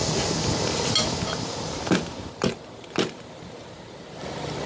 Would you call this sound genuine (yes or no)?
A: yes